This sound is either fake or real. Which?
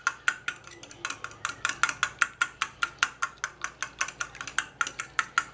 real